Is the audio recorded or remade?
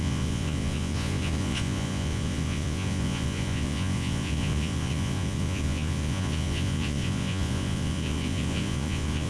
remade